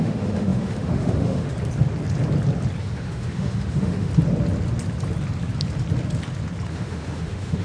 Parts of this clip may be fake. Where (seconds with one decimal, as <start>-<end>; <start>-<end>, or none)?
0.0-1.5; 2.8-4.1; 6.7-7.6